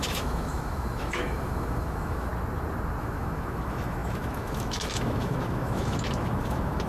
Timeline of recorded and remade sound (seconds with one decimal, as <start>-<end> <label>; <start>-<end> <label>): 0.0-2.3 remade; 2.3-3.0 recorded; 3.0-6.9 remade